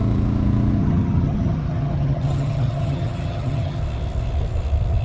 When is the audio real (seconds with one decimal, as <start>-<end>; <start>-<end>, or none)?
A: 0.0-0.8; 3.8-5.0

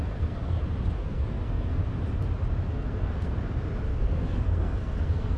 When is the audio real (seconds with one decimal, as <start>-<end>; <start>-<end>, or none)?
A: 0.6-1.0; 1.8-2.7; 3.4-3.9

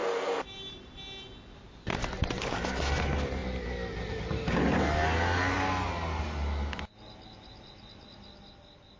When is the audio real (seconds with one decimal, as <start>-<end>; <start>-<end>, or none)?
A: 0.0-9.0

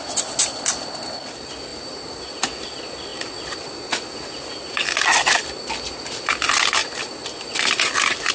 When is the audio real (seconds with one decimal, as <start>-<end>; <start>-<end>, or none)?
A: 0.0-1.7; 2.2-6.8

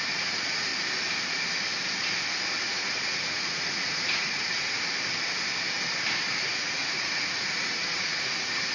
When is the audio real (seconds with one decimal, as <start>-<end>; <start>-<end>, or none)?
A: 0.7-2.6; 4.9-6.4

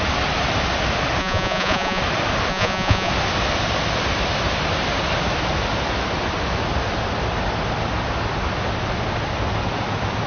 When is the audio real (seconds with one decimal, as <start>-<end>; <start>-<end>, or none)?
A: 0.0-1.2; 2.0-2.5; 3.1-10.3

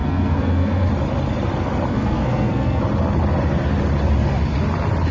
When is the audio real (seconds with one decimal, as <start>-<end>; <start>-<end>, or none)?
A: 0.9-1.9; 2.8-5.1

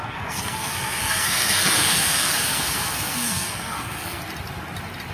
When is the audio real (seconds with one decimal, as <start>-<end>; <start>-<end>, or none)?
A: 4.2-5.1